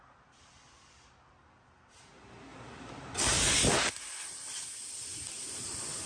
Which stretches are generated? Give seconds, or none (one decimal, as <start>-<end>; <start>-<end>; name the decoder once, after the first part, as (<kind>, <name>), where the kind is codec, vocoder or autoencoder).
none